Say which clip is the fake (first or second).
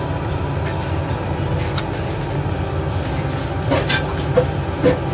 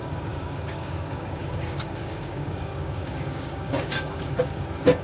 second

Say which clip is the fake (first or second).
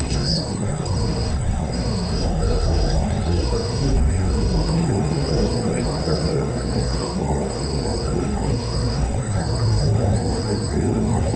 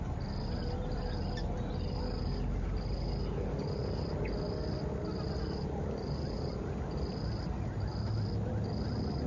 first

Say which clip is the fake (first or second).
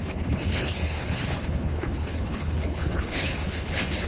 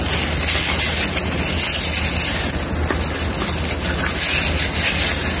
first